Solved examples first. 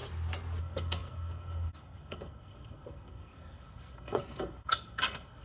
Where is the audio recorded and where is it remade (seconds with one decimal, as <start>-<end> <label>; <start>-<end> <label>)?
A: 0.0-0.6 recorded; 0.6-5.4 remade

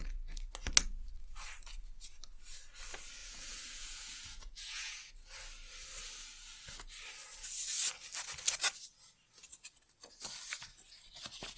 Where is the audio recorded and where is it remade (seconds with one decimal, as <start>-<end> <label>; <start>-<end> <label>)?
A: 0.0-3.2 recorded; 3.2-5.1 remade; 5.1-11.6 recorded

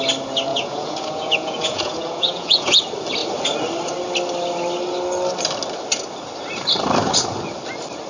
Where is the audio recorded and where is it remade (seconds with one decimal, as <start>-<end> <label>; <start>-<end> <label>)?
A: 0.0-0.5 recorded; 0.5-2.8 remade; 2.8-8.1 recorded

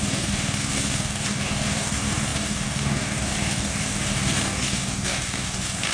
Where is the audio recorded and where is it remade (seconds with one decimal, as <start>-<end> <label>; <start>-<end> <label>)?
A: 0.0-5.9 remade

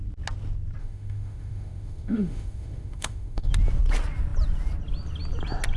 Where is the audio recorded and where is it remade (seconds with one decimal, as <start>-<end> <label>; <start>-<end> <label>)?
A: 0.0-0.8 recorded; 0.8-3.5 remade; 3.5-5.8 recorded

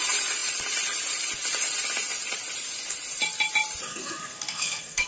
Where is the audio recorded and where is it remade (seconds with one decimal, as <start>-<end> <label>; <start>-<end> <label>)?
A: 0.0-3.9 recorded; 3.9-5.1 remade

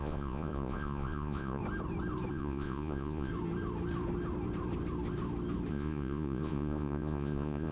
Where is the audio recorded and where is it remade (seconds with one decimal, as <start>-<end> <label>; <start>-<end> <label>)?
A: 0.0-1.6 remade; 1.6-2.3 recorded; 2.3-3.3 remade; 3.3-5.7 recorded; 5.7-7.7 remade